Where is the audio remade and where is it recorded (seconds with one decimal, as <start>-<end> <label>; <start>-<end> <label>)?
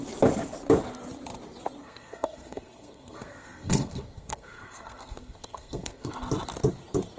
0.0-1.8 recorded; 1.8-6.1 remade; 6.1-7.2 recorded